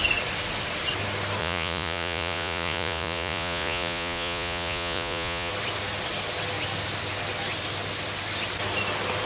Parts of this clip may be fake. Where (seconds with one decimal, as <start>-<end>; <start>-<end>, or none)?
1.4-5.5